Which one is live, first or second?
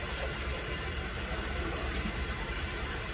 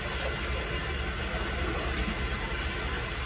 second